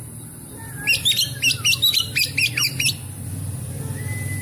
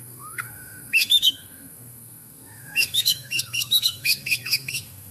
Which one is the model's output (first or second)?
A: second